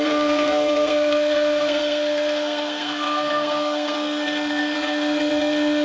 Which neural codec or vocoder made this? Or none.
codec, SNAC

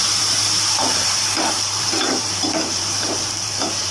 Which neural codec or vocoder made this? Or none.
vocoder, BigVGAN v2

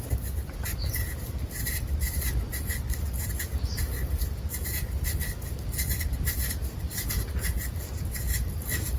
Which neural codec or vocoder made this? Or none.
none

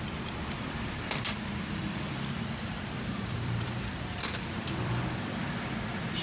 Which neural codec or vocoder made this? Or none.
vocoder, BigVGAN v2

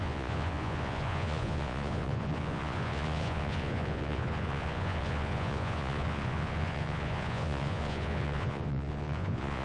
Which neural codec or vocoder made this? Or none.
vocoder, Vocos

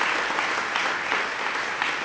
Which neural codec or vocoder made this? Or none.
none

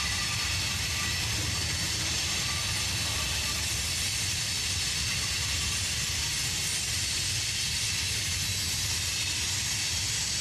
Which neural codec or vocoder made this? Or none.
none